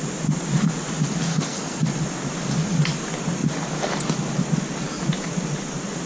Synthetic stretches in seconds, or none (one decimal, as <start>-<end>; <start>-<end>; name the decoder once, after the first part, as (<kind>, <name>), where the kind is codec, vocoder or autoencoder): 1.3-1.8 (codec, SNAC)